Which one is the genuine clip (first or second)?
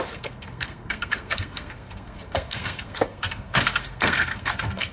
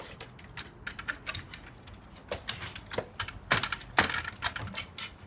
second